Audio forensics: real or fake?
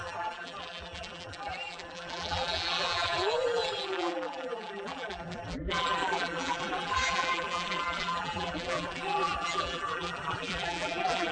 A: fake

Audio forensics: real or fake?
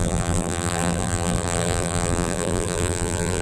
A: fake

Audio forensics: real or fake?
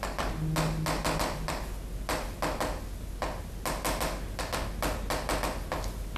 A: real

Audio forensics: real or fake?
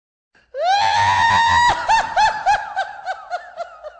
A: real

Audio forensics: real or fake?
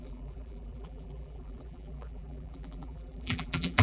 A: fake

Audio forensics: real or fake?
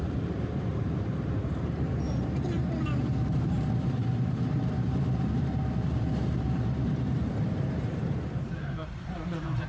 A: fake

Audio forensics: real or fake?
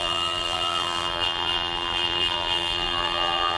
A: fake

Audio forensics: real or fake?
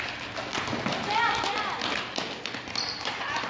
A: real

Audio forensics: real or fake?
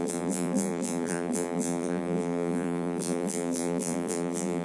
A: fake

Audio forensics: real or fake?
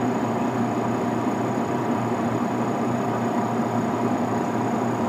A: fake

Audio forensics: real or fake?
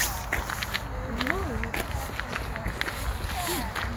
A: real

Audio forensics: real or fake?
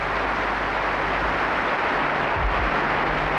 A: real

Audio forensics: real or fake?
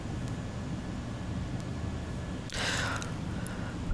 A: real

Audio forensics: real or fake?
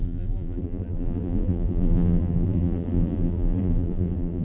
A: fake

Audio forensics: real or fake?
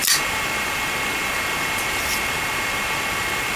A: real